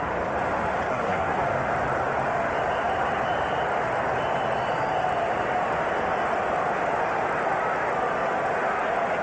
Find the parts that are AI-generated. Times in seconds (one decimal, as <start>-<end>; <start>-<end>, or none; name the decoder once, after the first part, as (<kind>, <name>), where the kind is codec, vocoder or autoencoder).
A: 0.9-1.4 (codec, SNAC)